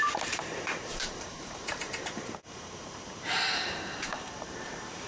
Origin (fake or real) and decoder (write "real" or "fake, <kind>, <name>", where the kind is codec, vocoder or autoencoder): fake, vocoder, BigVGAN v2